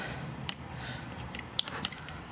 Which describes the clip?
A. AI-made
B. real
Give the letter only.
A